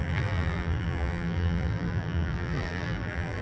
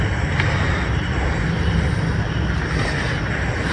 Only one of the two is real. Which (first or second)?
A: second